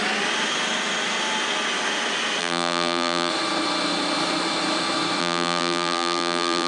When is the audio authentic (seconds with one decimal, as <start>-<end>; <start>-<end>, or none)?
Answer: 0.0-2.4; 3.3-5.2